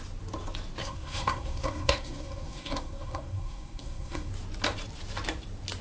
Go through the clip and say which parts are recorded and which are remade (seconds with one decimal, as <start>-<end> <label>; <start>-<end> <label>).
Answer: 0.0-0.8 recorded; 0.8-4.3 remade; 4.3-5.8 recorded